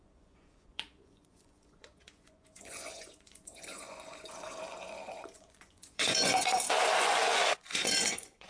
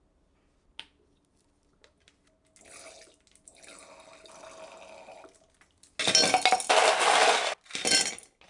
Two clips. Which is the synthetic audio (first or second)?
first